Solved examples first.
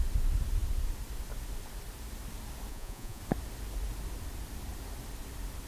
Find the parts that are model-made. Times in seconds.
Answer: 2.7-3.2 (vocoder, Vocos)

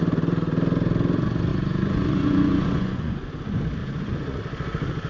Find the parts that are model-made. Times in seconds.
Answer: 1.5-3.2 (vocoder, Vocos); 3.8-4.4

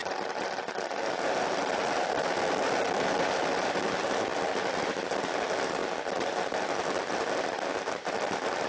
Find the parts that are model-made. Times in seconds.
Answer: none

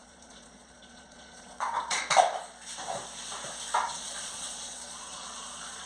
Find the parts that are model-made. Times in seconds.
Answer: 0.0-2.0 (vocoder, Vocos); 3.8-5.9

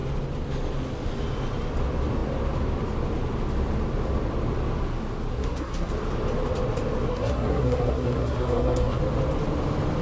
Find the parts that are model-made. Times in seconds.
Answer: 5.3-5.9 (codec, SNAC); 7.1-9.0

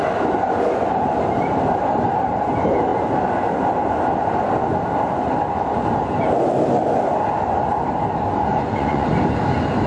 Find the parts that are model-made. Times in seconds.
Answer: 8.5-9.1 (vocoder, Vocos)